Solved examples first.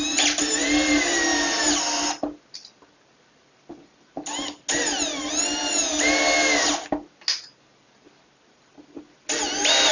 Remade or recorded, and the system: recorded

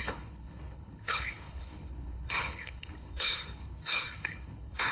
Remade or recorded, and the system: remade, codec, HILCodec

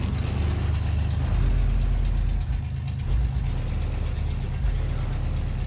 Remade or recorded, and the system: recorded